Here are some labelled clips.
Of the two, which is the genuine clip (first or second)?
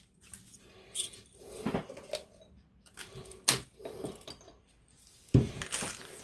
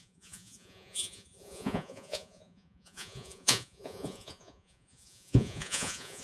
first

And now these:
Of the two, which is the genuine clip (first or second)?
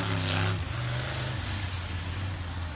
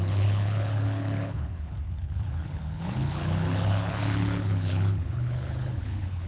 first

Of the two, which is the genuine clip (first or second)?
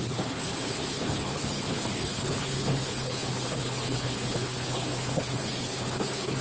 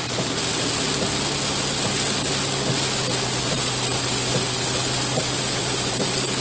second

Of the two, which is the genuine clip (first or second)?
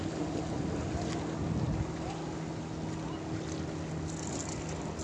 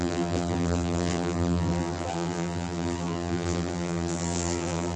first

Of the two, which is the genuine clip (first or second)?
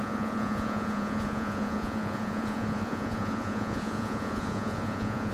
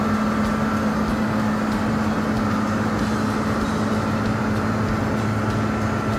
second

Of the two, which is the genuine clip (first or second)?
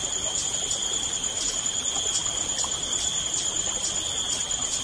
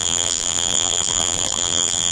first